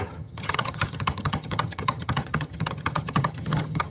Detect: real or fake fake